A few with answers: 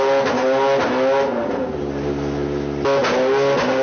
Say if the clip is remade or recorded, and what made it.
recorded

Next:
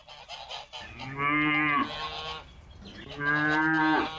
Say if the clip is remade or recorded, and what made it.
recorded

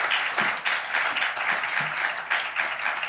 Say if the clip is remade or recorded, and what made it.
recorded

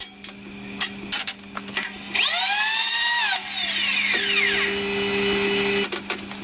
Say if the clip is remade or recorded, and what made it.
recorded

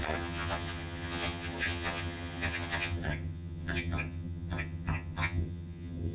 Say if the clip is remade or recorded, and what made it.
remade, vocoder, HiFi-GAN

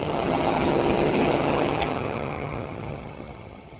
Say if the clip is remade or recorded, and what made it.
remade, vocoder, HiFi-GAN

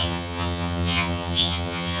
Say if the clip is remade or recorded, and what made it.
remade, vocoder, HiFi-GAN